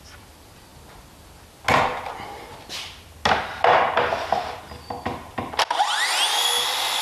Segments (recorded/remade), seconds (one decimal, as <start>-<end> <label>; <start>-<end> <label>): 0.0-7.0 recorded